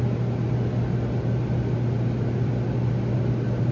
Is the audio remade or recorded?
recorded